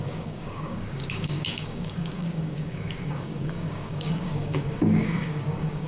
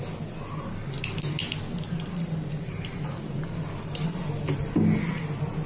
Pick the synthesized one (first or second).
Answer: first